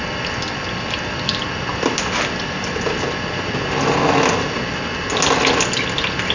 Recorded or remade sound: recorded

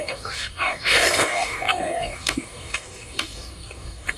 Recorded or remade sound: remade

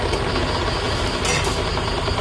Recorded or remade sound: recorded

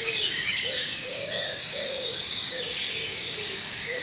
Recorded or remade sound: remade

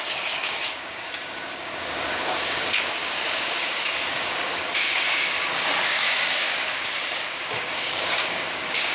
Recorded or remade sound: remade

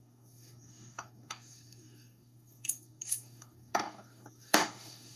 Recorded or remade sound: remade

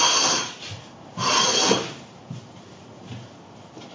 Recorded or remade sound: recorded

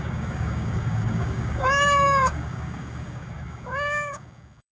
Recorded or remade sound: remade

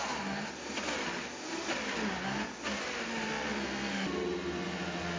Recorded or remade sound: recorded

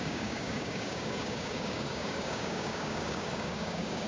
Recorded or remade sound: remade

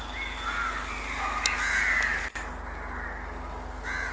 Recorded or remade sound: recorded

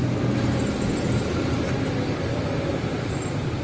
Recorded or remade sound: recorded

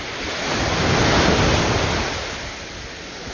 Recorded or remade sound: recorded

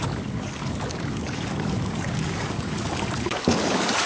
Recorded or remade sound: remade